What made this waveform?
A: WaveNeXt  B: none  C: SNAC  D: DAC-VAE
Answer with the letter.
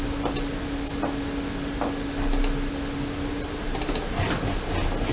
B